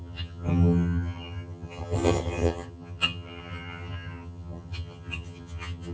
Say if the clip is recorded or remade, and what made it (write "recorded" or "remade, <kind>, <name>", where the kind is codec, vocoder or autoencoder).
remade, vocoder, HiFi-GAN